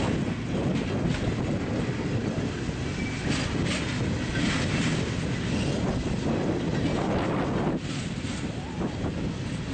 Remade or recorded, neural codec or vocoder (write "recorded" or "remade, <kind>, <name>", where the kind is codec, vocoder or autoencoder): recorded